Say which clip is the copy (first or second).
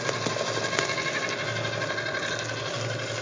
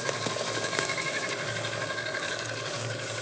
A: second